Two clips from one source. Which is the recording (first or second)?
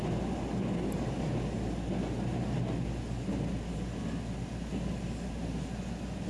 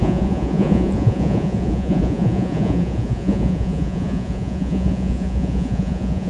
first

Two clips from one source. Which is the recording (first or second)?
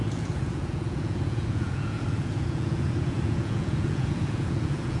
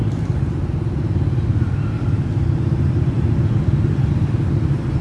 second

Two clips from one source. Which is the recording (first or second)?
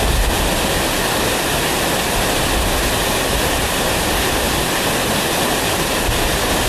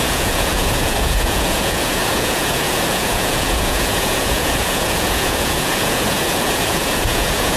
first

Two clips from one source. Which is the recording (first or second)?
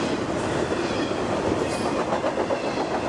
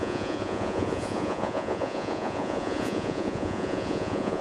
first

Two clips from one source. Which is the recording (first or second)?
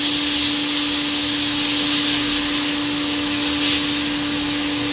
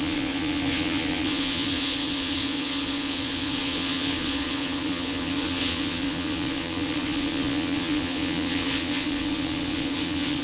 first